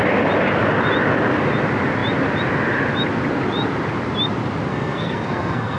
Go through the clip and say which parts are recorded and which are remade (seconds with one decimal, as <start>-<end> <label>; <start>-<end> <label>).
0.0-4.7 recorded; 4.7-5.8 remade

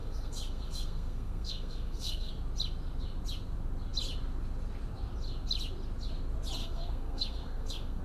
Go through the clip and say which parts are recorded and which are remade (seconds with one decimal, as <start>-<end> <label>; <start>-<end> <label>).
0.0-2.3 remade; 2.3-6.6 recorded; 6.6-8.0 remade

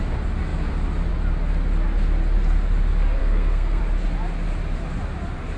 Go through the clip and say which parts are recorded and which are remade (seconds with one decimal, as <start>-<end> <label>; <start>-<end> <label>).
0.0-3.2 recorded; 3.2-3.8 remade; 3.8-5.6 recorded